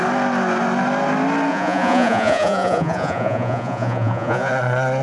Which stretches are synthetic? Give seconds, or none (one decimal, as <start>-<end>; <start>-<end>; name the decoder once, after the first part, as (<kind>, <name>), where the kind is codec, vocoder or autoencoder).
1.5-4.5 (vocoder, Vocos)